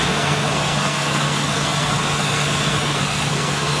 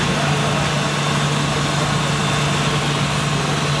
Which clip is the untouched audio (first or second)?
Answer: second